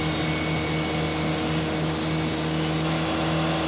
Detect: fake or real real